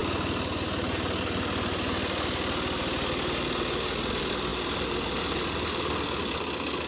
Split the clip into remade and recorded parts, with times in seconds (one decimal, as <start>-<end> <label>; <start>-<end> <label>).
0.0-4.1 recorded; 4.1-6.9 remade